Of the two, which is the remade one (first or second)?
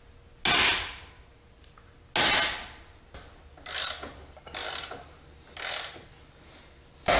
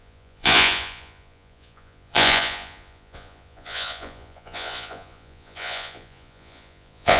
second